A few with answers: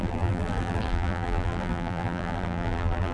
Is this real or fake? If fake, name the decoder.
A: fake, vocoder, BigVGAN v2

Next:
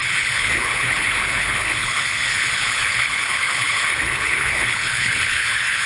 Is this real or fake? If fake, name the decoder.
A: fake, codec, HILCodec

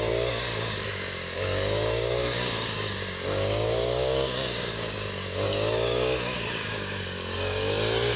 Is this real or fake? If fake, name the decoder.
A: fake, codec, DAC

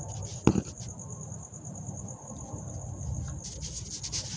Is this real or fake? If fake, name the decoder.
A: real